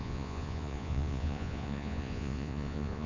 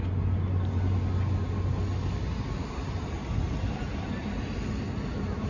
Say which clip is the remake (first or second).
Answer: first